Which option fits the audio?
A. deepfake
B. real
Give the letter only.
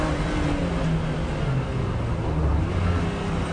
B